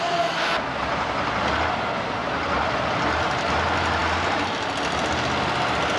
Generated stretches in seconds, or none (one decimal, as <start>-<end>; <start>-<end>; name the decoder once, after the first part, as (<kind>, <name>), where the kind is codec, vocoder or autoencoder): 2.2-3.3 (vocoder, BigVGAN v2)